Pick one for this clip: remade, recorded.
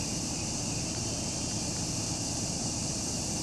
remade